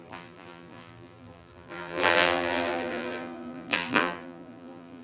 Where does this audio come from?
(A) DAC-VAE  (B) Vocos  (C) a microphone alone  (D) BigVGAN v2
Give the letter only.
D